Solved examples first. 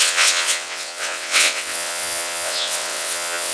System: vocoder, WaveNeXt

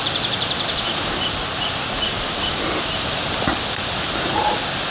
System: none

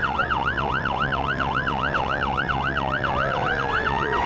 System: vocoder, WaveNeXt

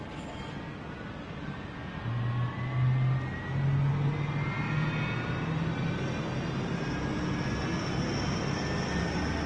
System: none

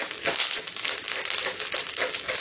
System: none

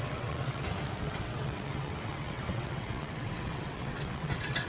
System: vocoder, WaveNeXt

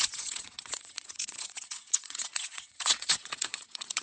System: vocoder, WaveNeXt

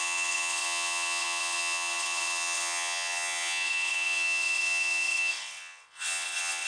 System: vocoder, WaveNeXt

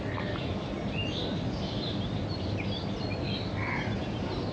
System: none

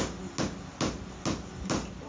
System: none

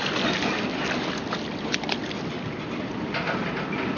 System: none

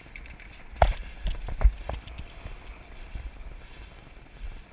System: none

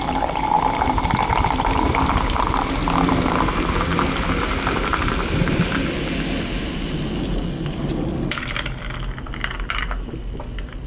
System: none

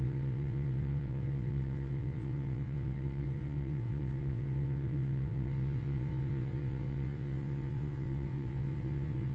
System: vocoder, WaveNeXt